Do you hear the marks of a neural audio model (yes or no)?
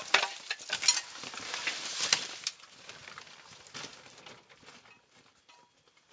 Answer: no